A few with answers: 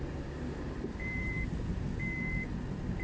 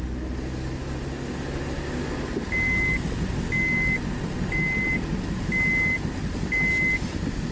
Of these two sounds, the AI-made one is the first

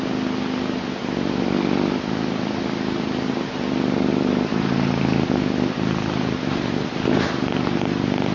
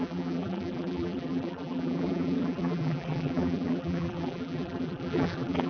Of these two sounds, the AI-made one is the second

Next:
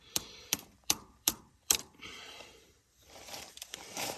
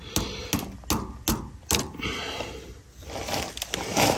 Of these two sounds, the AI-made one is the first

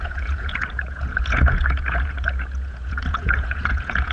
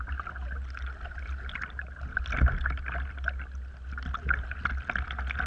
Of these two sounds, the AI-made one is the first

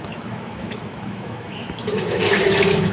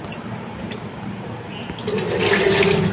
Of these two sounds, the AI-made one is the first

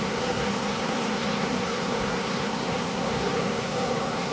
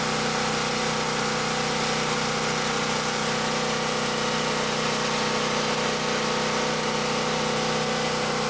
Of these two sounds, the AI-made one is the first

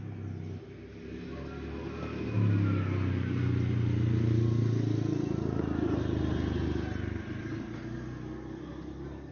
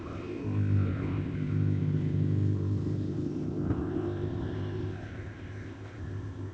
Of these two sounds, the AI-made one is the second